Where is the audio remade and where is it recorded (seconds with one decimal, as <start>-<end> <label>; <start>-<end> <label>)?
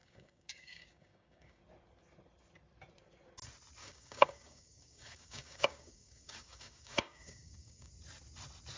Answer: 0.0-1.6 remade; 1.6-3.8 recorded; 3.8-7.9 remade; 7.9-8.8 recorded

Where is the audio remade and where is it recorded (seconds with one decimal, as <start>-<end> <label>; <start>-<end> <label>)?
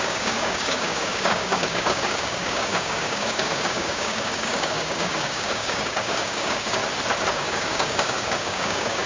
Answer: 0.0-6.8 remade; 6.8-7.3 recorded; 7.3-9.1 remade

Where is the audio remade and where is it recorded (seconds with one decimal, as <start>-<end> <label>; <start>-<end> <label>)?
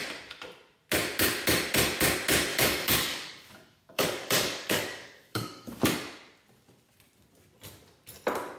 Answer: 0.0-2.5 recorded; 2.5-5.8 remade; 5.8-8.6 recorded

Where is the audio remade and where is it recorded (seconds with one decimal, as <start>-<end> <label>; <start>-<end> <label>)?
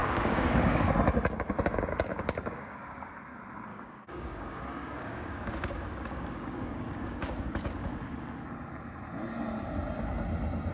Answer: 0.0-0.9 remade; 0.9-2.1 recorded; 2.1-3.1 remade; 3.1-3.7 recorded; 3.7-8.2 remade; 8.2-10.7 recorded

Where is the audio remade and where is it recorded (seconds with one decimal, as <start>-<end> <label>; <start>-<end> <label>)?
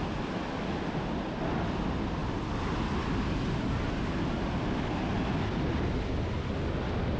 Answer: 0.0-7.2 recorded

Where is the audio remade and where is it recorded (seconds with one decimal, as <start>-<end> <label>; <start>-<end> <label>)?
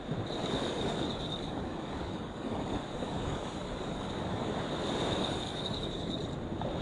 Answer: 0.0-0.4 recorded; 0.4-4.5 remade; 4.5-5.2 recorded; 5.2-6.2 remade; 6.2-6.8 recorded